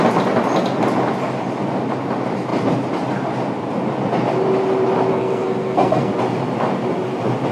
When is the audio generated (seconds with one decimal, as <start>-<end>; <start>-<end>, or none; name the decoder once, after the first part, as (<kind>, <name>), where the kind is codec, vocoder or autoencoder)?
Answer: 5.1-6.1 (codec, SNAC)